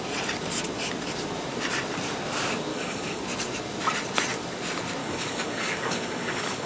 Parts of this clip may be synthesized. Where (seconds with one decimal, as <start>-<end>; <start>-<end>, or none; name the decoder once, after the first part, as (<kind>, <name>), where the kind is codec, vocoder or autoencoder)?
2.7-3.2 (codec, DAC); 5.0-6.7